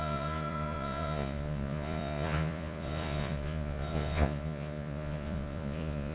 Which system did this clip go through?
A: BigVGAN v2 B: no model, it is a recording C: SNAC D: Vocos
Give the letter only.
D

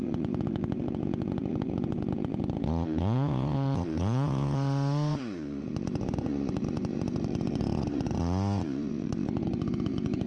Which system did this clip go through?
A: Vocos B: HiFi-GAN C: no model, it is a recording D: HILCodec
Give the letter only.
A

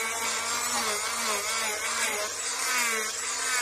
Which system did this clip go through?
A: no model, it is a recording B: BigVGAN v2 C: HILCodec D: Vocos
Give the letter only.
A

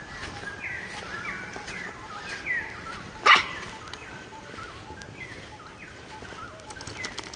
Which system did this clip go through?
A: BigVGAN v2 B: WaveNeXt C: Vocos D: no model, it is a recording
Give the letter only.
D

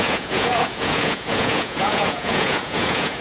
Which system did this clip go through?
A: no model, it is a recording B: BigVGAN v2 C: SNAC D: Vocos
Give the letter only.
D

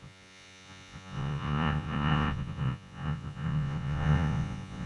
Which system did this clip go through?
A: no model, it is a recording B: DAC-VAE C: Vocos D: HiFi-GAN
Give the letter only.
C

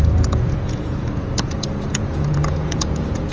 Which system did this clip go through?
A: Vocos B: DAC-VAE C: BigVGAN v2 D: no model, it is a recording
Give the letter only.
A